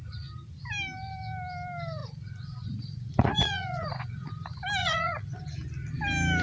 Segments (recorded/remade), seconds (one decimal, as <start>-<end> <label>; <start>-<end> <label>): 0.0-2.0 recorded; 2.0-4.3 remade; 4.3-4.8 recorded; 4.8-5.4 remade; 5.4-6.4 recorded